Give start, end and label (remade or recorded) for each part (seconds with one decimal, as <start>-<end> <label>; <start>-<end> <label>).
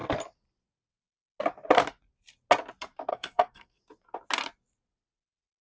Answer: 0.0-3.1 recorded; 3.1-3.8 remade; 3.8-5.6 recorded